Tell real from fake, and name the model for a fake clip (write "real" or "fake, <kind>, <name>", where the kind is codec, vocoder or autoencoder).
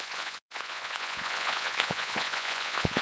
fake, vocoder, Vocos